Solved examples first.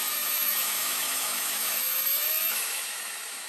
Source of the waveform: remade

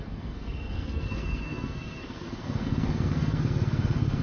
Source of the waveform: remade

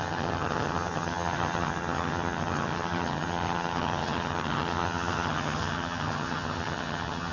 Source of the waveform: remade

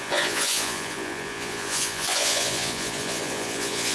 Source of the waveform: remade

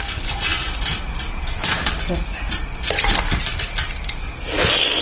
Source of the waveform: remade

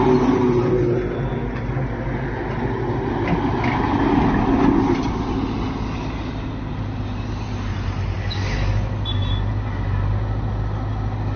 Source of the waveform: recorded